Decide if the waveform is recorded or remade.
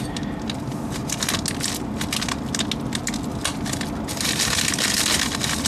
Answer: recorded